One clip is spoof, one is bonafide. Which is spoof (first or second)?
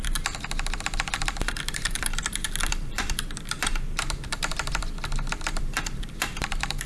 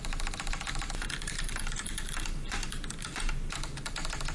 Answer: first